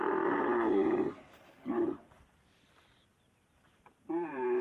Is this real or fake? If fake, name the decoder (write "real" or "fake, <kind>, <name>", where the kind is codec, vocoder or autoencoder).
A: fake, vocoder, BigVGAN v2